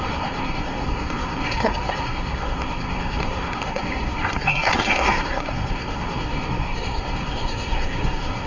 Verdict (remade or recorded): remade